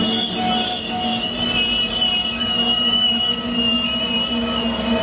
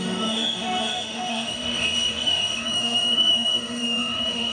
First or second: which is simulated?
second